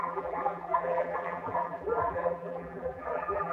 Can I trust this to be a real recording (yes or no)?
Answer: no